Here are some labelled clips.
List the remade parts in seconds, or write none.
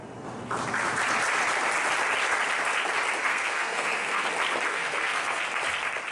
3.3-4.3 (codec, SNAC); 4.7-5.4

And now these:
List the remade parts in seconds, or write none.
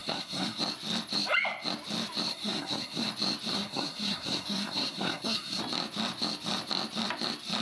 0.0-0.6 (codec, SNAC); 2.3-3.1; 3.5-5.6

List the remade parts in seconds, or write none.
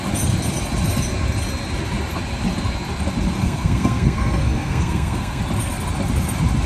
3.4-5.4 (codec, SNAC)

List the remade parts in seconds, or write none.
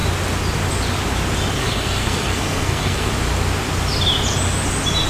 1.6-3.1 (codec, SNAC)